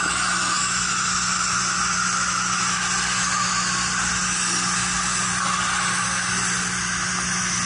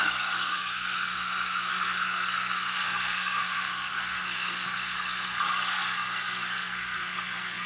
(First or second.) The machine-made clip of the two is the second